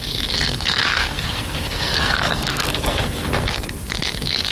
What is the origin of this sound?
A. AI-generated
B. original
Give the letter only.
A